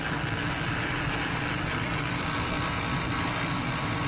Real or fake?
real